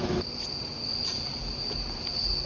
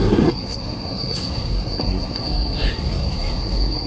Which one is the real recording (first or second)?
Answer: first